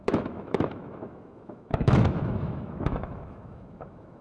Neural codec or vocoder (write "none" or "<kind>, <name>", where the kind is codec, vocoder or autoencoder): autoencoder, DAC-VAE